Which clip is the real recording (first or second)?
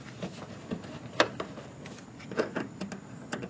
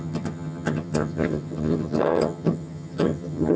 first